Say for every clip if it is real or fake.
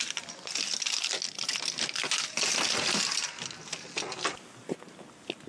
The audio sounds real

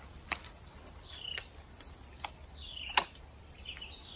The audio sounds fake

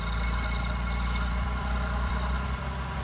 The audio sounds fake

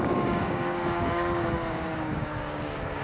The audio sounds fake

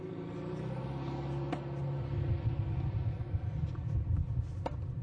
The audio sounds real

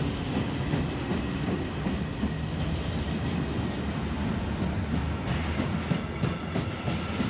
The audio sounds real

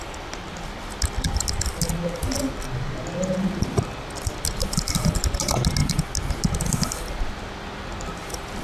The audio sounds real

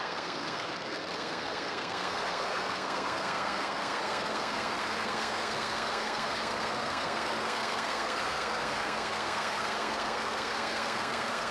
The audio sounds fake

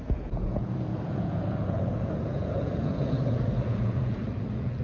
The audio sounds fake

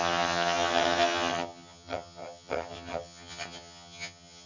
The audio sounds fake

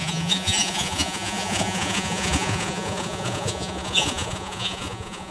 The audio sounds fake